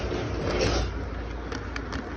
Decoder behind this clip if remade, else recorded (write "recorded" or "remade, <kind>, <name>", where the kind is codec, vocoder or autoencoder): recorded